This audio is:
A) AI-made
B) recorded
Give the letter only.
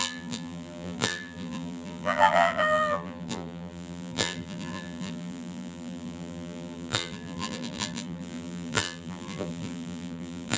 A